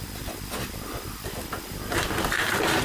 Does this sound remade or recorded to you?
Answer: recorded